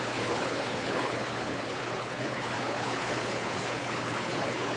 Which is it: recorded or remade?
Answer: remade